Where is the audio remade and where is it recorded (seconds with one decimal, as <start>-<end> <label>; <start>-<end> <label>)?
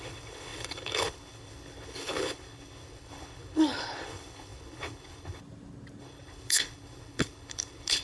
0.0-5.4 remade; 5.4-6.0 recorded; 6.0-8.0 remade